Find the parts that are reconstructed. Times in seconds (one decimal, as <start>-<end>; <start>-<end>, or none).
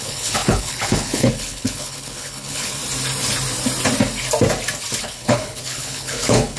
0.0-2.8; 5.0-6.6